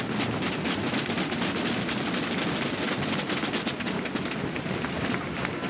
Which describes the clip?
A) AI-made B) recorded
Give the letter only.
B